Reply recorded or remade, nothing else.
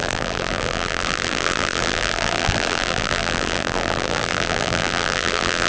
remade